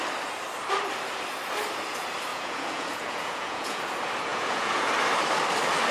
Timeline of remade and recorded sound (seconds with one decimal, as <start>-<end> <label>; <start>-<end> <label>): 0.0-2.3 recorded; 2.3-3.8 remade; 3.8-4.3 recorded; 4.3-4.9 remade; 4.9-5.9 recorded